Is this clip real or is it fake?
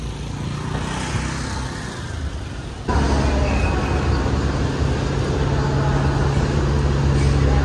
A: real